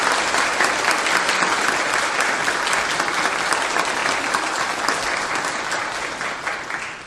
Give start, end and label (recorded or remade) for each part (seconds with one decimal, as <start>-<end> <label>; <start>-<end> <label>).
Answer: 0.0-7.1 recorded